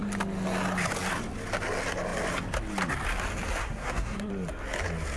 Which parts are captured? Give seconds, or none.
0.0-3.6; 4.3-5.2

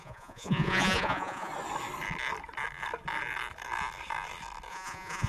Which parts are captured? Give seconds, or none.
1.5-4.7

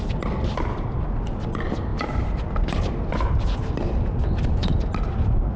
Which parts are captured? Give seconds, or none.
0.0-5.6

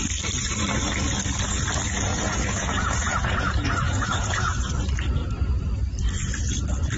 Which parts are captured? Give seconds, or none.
0.0-2.1; 4.7-7.0

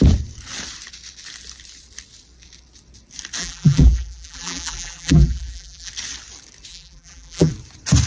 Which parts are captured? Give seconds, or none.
0.0-3.4; 5.9-6.7; 7.5-8.1

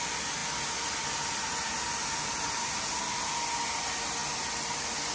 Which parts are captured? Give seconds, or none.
0.0-5.1